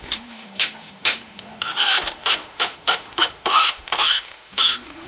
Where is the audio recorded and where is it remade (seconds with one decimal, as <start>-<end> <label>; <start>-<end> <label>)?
0.0-5.1 remade